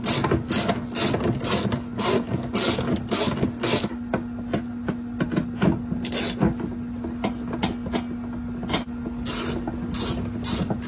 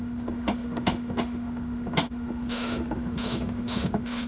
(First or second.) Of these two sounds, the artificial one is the second